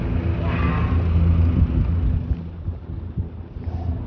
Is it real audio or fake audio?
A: real